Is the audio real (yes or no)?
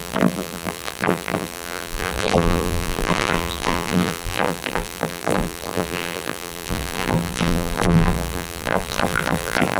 no